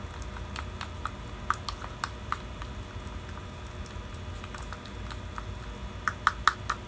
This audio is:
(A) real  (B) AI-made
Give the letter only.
A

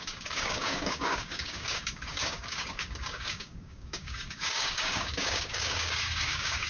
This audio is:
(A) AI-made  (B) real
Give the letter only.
A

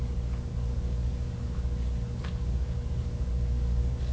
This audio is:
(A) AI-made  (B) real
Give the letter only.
A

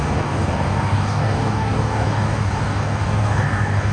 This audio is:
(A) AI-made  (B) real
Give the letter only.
A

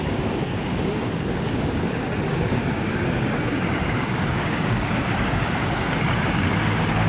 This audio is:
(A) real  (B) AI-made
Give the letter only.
B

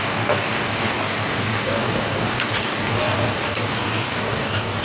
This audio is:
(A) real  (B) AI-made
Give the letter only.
B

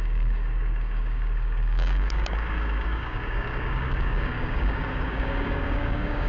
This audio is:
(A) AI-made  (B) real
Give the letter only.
A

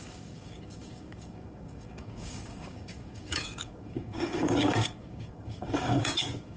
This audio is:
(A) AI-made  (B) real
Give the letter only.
A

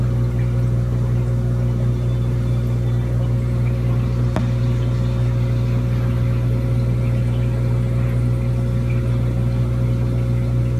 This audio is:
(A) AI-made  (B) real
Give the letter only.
B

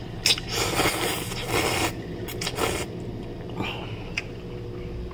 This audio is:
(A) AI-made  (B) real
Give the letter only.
B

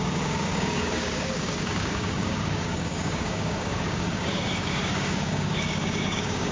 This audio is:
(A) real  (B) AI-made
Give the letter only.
B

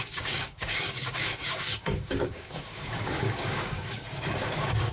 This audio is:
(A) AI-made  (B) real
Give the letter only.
A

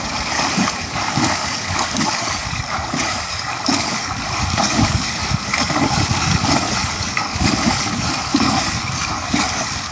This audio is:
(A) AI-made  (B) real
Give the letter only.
A